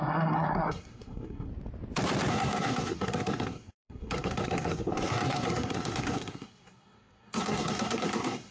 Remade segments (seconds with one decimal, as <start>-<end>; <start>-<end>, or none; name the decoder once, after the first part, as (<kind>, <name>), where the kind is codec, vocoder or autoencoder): 0.0-1.5 (codec, SNAC); 2.3-8.5